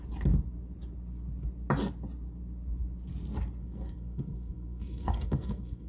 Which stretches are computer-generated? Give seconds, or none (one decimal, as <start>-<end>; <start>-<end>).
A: 3.6-5.9